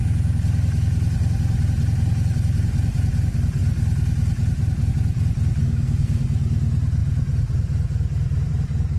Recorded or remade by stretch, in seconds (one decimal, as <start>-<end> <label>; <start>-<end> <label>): 0.0-5.6 recorded; 5.6-6.2 remade; 6.2-9.0 recorded